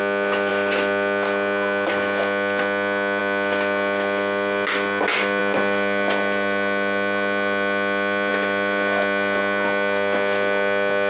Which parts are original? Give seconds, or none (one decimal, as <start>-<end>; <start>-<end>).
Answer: 0.0-11.1